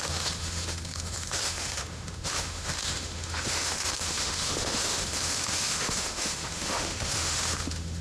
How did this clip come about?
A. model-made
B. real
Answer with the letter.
A